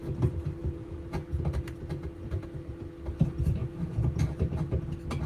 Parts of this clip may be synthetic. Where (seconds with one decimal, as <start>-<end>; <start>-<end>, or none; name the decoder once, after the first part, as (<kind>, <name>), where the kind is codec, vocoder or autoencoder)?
0.6-1.4 (vocoder, Vocos); 2.2-2.8; 3.6-4.2